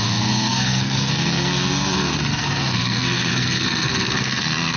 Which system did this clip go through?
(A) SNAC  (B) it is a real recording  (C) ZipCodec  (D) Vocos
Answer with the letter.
A